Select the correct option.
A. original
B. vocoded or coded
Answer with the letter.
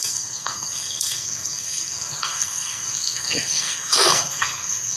B